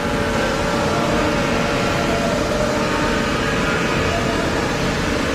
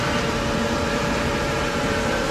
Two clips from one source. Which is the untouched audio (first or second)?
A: first